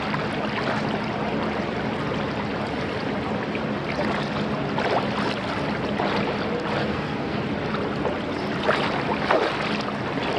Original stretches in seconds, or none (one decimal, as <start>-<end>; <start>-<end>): 0.0-6.8; 7.4-10.4

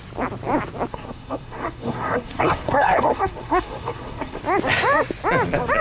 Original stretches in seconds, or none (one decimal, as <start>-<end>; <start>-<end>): 0.0-0.9; 4.4-5.8

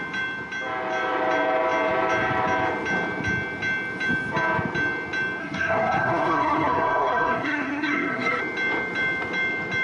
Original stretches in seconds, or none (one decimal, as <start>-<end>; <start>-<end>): 0.0-5.4; 8.4-9.8

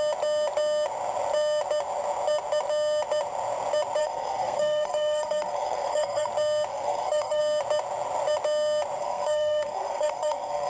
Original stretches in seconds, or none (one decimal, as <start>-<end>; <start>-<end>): 0.0-4.0; 6.3-6.7; 7.4-9.0

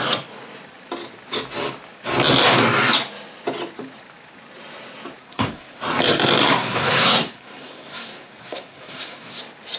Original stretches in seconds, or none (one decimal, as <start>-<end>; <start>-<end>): 0.0-5.2; 5.8-6.4; 9.4-9.8